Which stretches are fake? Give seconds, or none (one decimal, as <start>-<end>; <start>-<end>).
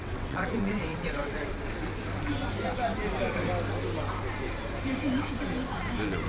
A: 0.0-1.4